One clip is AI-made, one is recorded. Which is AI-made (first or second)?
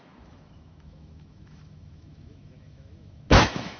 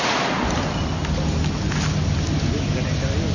first